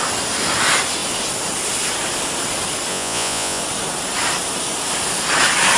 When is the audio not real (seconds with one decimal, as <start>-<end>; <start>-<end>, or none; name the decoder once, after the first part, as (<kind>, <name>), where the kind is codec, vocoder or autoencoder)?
2.9-3.6 (vocoder, Vocos)